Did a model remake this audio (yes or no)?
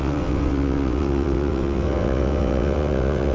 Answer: yes